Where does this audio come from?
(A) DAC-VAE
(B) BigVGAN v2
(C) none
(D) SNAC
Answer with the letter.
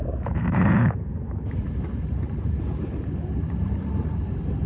B